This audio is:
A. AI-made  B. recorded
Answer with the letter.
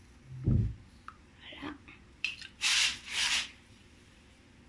A